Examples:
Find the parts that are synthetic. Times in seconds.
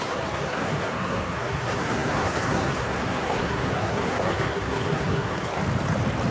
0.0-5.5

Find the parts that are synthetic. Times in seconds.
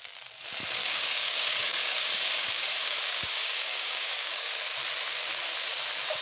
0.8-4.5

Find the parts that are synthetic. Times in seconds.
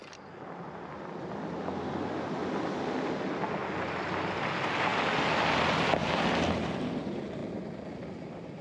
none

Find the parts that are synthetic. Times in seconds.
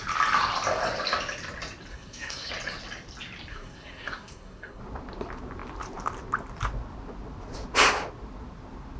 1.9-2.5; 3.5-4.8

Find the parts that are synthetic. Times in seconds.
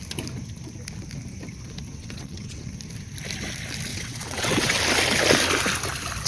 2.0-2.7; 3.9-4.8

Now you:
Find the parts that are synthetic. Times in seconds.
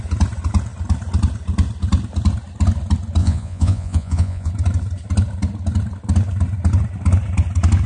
3.2-4.5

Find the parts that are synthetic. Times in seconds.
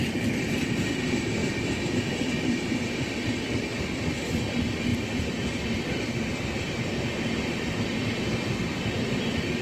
0.0-9.6